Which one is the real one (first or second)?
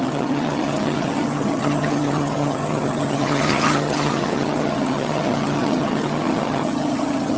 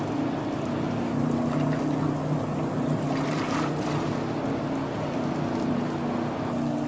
second